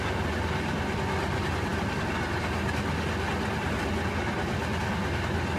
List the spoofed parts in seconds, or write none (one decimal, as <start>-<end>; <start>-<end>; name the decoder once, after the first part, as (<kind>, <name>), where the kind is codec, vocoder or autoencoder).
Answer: none